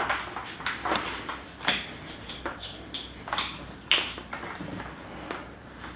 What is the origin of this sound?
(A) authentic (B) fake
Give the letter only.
A